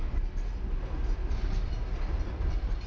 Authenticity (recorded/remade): recorded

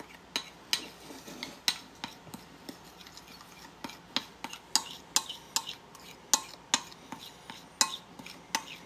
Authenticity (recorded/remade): recorded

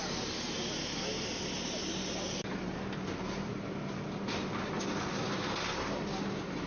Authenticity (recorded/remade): recorded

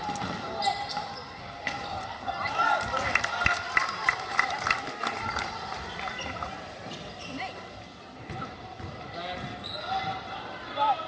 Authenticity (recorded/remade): recorded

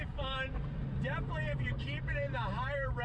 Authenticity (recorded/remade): remade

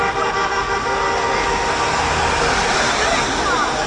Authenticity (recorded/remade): recorded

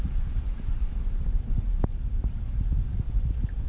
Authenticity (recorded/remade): remade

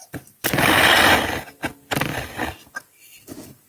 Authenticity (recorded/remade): recorded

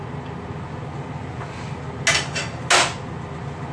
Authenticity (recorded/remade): recorded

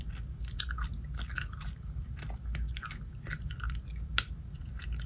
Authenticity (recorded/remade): recorded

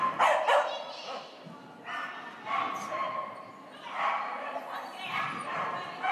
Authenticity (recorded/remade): recorded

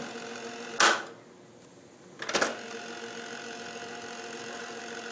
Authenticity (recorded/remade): recorded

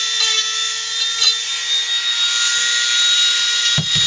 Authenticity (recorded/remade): recorded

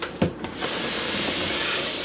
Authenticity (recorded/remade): recorded